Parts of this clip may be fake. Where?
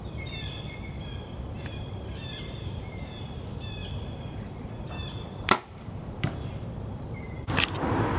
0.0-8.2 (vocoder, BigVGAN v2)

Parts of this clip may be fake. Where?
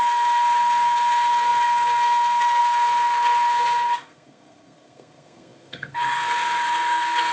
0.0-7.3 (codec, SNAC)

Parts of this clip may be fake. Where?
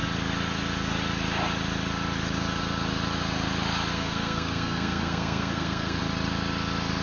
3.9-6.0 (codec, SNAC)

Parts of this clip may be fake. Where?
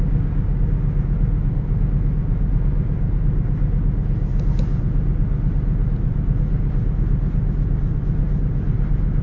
none